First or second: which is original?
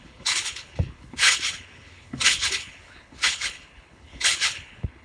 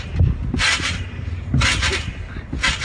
second